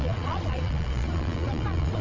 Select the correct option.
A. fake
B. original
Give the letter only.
A